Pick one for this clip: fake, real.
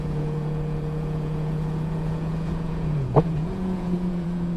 fake